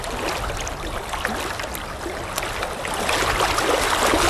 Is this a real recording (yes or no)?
yes